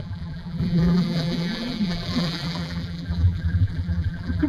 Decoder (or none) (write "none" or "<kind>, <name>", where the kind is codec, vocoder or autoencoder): vocoder, BigVGAN v2